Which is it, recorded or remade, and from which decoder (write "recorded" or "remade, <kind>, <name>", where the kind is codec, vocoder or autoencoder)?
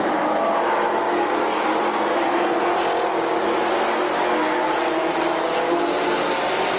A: recorded